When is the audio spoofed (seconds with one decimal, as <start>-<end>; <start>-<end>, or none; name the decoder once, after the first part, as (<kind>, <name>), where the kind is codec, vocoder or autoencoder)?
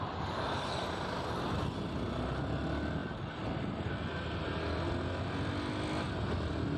none